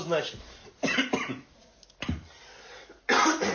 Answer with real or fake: real